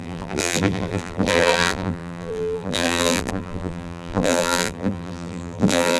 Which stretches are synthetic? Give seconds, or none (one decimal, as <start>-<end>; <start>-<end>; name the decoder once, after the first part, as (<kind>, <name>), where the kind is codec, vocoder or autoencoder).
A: 0.0-6.0 (vocoder, BigVGAN v2)